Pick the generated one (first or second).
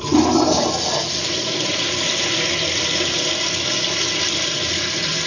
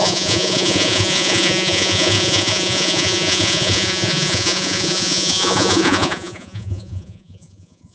second